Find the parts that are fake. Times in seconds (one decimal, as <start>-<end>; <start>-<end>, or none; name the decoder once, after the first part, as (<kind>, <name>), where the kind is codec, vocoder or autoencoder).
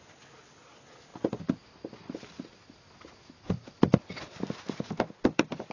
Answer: none